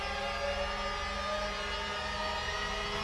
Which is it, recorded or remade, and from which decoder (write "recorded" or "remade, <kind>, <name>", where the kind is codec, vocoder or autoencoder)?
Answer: recorded